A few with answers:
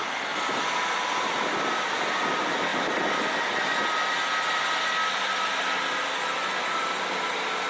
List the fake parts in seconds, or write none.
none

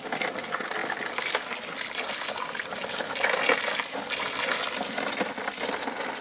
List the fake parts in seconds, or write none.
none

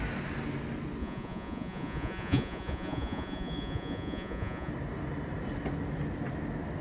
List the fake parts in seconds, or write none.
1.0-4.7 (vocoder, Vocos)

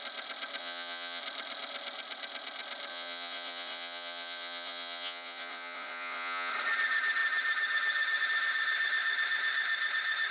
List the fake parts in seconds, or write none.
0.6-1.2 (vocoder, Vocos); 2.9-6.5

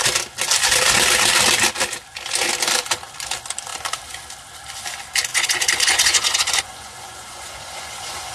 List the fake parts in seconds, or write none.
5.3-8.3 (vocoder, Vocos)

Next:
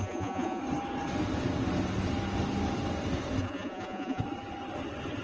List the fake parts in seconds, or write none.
0.0-0.6 (vocoder, Vocos); 3.4-4.2